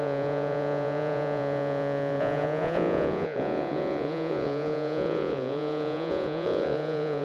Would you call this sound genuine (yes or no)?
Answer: no